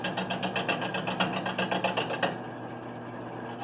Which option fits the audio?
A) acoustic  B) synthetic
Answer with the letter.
A